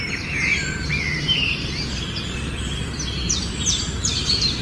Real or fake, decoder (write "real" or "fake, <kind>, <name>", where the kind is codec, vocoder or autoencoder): fake, vocoder, BigVGAN v2